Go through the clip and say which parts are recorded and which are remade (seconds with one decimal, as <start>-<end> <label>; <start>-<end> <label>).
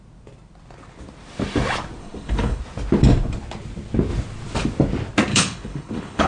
0.0-2.0 recorded; 2.0-2.6 remade; 2.6-5.3 recorded; 5.3-6.3 remade